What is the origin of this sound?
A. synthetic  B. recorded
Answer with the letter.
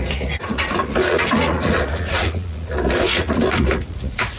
A